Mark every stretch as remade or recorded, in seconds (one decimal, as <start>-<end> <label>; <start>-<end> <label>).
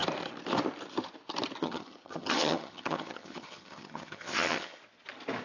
0.0-1.6 recorded; 1.6-4.8 remade; 4.8-5.4 recorded